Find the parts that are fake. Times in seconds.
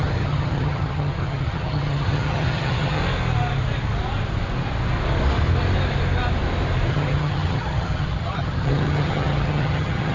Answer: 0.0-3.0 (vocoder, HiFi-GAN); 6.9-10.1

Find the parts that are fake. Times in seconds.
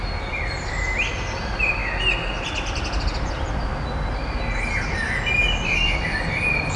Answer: none